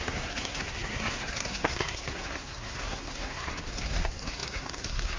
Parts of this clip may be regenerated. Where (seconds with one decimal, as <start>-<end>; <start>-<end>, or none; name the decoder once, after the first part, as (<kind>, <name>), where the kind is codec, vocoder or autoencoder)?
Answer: 0.0-5.2 (codec, SNAC)